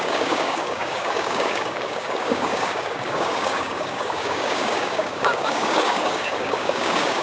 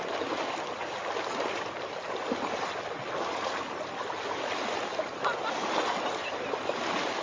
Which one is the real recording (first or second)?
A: second